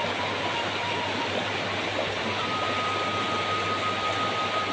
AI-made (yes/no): no